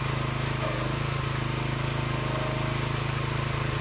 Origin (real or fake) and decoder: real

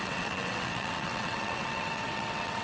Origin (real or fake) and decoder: fake, vocoder, WaveNeXt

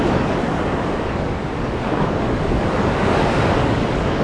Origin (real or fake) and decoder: fake, codec, DAC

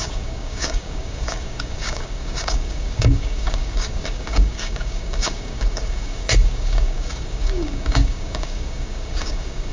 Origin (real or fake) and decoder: fake, codec, DAC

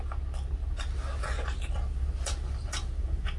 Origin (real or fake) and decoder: real